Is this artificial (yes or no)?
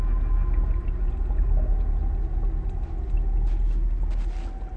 no